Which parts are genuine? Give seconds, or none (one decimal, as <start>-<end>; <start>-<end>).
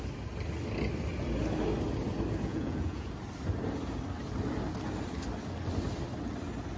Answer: 0.0-2.5; 3.1-6.8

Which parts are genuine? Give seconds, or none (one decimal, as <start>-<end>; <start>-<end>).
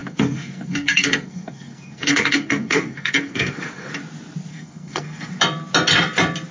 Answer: 3.9-4.5; 5.3-6.5